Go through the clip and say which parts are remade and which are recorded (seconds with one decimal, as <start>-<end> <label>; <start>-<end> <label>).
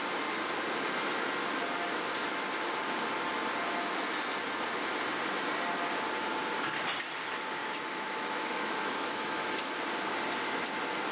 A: 0.0-7.6 recorded; 7.6-9.7 remade; 9.7-11.1 recorded